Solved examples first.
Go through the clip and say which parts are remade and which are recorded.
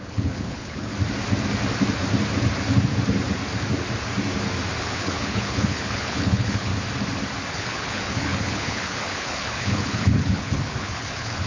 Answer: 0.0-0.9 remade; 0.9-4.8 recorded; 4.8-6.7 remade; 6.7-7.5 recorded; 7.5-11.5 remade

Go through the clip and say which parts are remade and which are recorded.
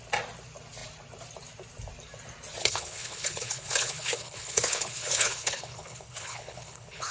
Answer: 0.0-2.6 recorded; 2.6-7.1 remade